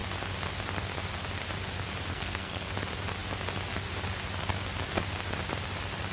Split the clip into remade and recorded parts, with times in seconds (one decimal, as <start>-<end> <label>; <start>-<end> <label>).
0.0-2.1 recorded; 2.1-2.7 remade; 2.7-6.1 recorded